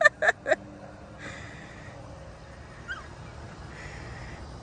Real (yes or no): yes